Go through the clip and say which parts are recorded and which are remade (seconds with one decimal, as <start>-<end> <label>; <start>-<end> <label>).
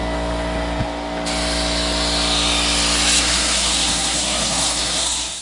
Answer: 0.0-3.2 recorded; 3.2-5.4 remade